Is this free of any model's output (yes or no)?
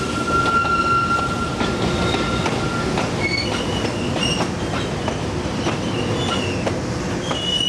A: yes